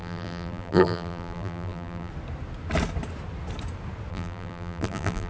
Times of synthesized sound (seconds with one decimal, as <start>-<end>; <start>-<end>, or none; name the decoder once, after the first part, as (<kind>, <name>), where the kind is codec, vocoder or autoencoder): 0.0-2.1 (vocoder, BigVGAN v2); 4.1-5.3

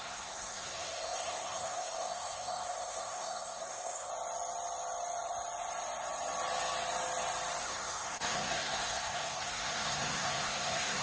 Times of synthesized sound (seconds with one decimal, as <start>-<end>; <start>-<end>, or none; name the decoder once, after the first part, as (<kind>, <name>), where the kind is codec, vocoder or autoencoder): 0.0-4.1 (codec, SNAC); 7.6-11.0

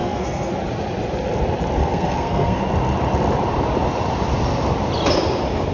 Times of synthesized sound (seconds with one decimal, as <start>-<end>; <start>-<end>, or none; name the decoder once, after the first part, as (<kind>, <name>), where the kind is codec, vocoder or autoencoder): 0.0-0.5 (codec, SNAC); 1.8-2.6

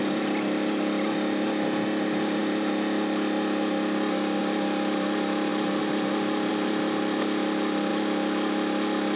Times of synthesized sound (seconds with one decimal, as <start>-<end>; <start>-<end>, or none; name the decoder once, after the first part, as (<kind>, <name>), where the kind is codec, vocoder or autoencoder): 0.0-2.4 (vocoder, BigVGAN v2); 4.4-5.5; 6.5-7.9

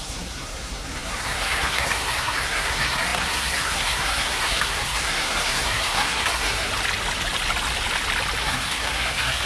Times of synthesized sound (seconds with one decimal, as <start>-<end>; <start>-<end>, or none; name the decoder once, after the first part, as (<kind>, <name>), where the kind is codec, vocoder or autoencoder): 0.0-6.7 (codec, SNAC); 8.4-9.5

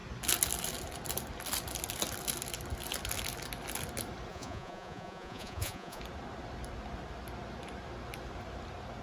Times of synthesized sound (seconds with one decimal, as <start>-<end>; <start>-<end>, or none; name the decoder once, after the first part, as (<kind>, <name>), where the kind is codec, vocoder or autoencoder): 4.3-6.0 (vocoder, Vocos)

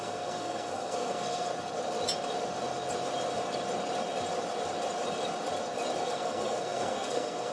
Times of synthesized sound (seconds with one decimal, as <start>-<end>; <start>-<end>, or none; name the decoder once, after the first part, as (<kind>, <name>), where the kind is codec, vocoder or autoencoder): 0.0-1.5 (codec, SNAC); 6.0-7.5